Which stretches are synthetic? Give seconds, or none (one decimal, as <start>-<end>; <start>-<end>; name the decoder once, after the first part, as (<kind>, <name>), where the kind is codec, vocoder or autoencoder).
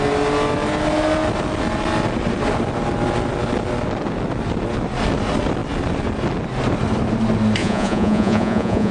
7.6-8.9 (vocoder, Vocos)